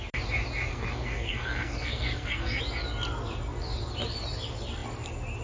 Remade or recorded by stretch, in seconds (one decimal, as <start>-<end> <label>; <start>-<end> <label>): 0.0-0.7 recorded; 0.7-2.6 remade; 2.6-5.4 recorded